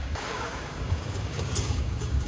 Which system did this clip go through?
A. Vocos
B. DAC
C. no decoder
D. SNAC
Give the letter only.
B